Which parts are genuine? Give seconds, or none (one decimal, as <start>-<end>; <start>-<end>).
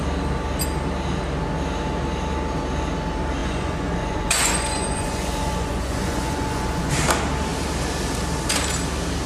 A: 0.0-3.4; 6.9-9.3